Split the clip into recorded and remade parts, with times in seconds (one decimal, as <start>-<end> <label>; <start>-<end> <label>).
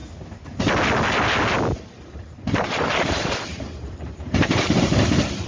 0.0-2.1 recorded; 2.1-5.5 remade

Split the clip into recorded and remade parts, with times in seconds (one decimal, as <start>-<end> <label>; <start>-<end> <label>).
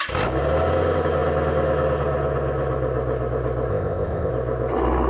0.0-3.7 recorded; 3.7-4.3 remade; 4.3-5.1 recorded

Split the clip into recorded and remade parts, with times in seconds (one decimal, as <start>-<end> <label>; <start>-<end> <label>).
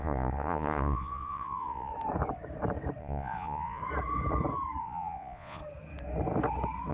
0.0-1.9 remade; 1.9-3.0 recorded; 3.0-3.8 remade; 3.8-4.8 recorded; 4.8-5.6 remade; 5.6-6.9 recorded